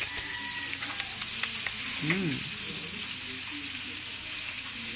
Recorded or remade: recorded